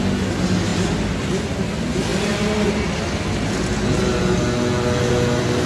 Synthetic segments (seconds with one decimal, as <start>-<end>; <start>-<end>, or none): none